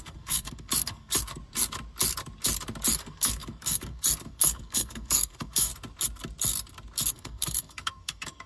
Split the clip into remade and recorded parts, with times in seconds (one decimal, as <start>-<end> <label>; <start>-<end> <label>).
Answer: 0.0-1.4 remade; 1.4-3.0 recorded; 3.0-5.7 remade; 5.7-7.1 recorded; 7.1-8.5 remade